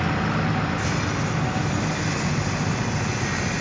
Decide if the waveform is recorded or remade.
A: recorded